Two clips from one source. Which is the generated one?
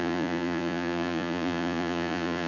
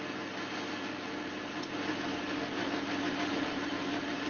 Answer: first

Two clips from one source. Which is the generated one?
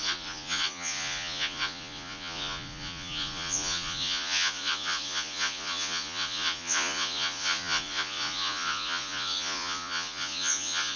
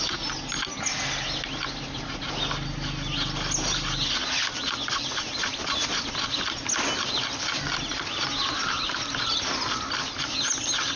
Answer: first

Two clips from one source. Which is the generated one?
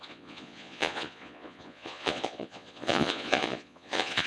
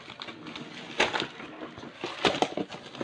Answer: first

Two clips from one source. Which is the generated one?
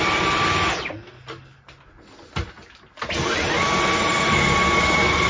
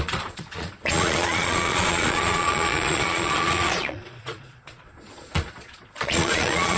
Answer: second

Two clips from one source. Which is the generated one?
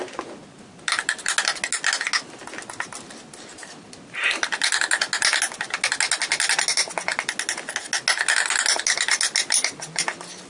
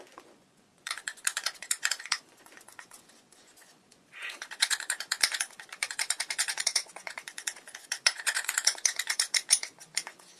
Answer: second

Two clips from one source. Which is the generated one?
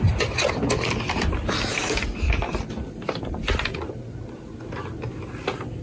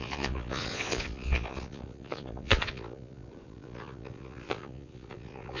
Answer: second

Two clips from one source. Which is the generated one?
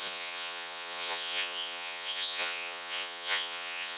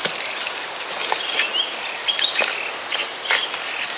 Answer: first